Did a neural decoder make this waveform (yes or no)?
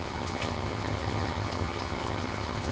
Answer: yes